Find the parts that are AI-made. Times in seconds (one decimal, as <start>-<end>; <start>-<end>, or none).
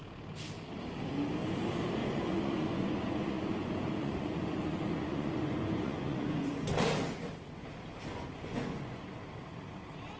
2.0-6.5; 8.1-9.0